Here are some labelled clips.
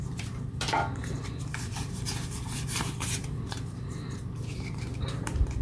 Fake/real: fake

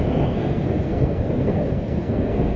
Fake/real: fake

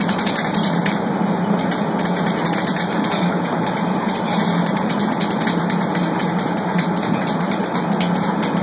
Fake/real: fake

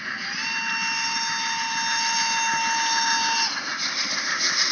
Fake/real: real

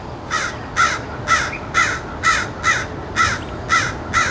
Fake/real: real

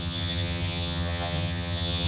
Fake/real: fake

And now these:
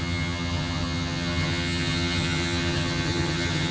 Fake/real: fake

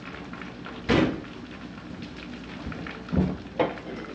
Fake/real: real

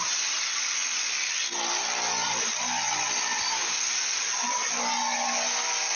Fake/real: real